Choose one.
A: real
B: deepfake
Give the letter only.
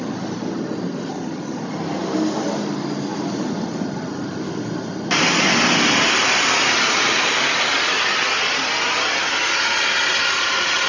A